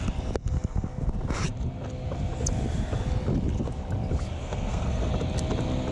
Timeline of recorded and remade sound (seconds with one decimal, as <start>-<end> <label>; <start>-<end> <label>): 0.0-4.4 recorded; 4.4-5.1 remade; 5.1-5.9 recorded